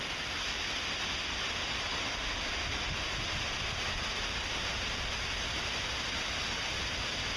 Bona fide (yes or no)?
yes